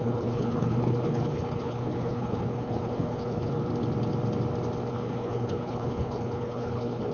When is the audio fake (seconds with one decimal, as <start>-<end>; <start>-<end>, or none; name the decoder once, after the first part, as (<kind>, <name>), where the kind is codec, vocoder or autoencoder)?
0.0-3.7 (codec, HILCodec); 4.9-7.1